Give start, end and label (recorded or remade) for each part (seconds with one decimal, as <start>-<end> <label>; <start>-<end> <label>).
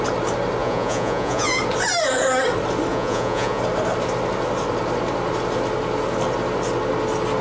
0.0-0.6 recorded; 0.6-1.6 remade; 1.6-2.9 recorded; 2.9-3.6 remade; 3.6-7.4 recorded